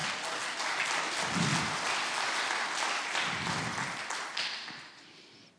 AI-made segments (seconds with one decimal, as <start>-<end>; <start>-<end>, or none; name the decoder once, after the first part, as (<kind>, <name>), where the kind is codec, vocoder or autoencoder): none